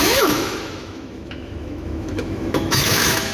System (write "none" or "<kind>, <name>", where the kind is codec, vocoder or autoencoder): autoencoder, DAC-VAE